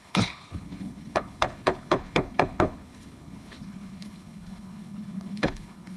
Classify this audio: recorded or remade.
remade